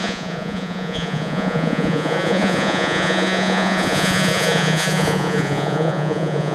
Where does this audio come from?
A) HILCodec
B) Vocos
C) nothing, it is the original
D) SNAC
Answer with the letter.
B